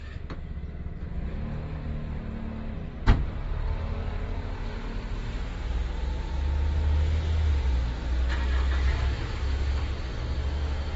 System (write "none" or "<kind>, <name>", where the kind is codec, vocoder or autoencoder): none